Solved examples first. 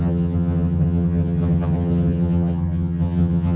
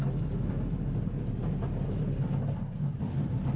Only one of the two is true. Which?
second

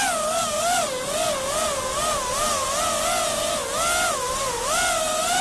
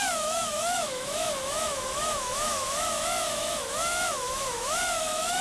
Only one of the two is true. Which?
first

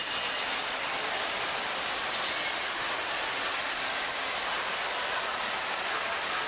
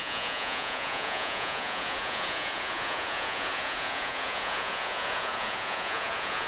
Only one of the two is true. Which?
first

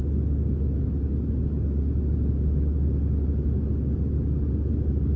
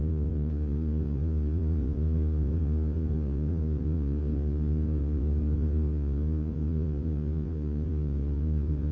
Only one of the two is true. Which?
first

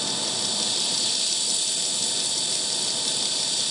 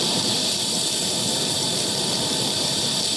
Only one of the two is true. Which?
first